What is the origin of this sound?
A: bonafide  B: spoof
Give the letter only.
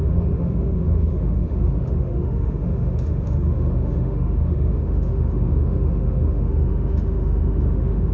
B